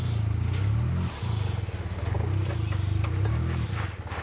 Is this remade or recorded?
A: recorded